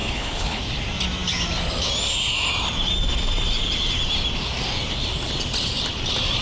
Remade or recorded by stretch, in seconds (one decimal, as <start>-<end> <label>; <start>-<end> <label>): 0.0-0.6 remade; 0.6-6.4 recorded